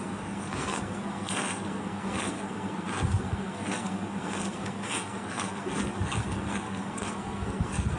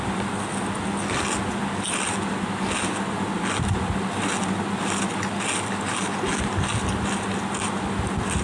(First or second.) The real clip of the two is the second